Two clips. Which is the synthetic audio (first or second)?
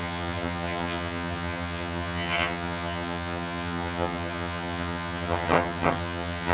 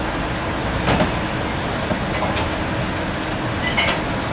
first